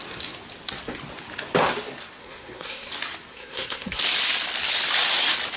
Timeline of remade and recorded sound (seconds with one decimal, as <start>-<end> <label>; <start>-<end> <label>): 0.0-2.2 recorded; 2.2-2.9 remade; 2.9-3.3 recorded; 3.3-4.0 remade; 4.0-5.6 recorded